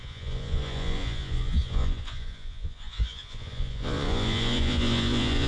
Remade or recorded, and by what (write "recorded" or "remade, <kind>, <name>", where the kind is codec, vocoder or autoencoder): remade, vocoder, Vocos